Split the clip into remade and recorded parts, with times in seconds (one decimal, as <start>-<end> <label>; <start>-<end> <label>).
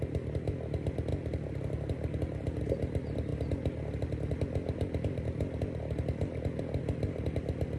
0.0-7.8 recorded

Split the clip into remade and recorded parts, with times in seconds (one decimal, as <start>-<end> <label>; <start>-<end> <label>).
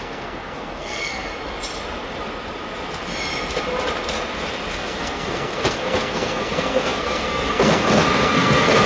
0.0-1.3 remade; 1.3-4.7 recorded; 4.7-8.9 remade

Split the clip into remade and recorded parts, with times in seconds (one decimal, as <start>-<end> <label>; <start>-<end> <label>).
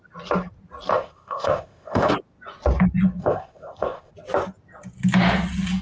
0.0-0.9 recorded; 0.9-2.1 remade; 2.1-3.2 recorded; 3.2-4.1 remade; 4.1-5.8 recorded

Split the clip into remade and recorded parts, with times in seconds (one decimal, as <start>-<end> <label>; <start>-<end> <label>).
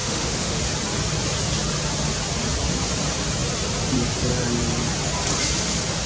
0.0-0.6 remade; 0.6-6.1 recorded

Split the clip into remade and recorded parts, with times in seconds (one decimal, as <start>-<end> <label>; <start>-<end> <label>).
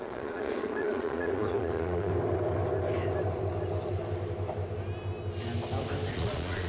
0.0-2.1 remade; 2.1-6.1 recorded; 6.1-6.7 remade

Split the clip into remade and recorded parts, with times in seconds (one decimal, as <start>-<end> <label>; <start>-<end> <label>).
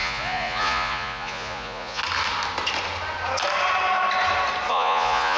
0.0-2.0 remade; 2.0-4.7 recorded; 4.7-5.4 remade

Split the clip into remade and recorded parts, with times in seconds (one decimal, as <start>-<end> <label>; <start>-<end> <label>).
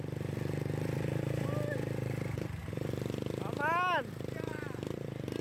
0.0-5.4 recorded